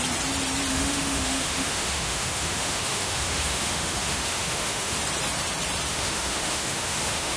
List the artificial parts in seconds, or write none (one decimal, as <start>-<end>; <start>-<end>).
0.7-5.0; 5.9-7.4